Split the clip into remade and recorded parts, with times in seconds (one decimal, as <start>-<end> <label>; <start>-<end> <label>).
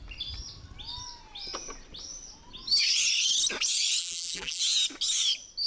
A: 0.0-4.0 recorded; 4.0-4.6 remade; 4.6-5.7 recorded